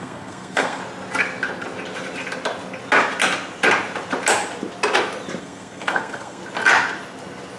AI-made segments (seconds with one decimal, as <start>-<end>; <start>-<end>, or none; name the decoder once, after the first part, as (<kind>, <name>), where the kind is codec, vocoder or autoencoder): 0.0-0.8 (codec, SNAC); 5.4-6.4